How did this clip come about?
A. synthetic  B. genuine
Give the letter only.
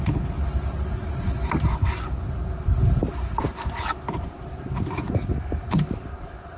B